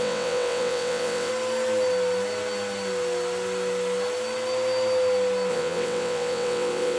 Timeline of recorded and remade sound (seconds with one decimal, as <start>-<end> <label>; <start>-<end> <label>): 0.0-1.3 remade; 1.3-5.5 recorded; 5.5-7.0 remade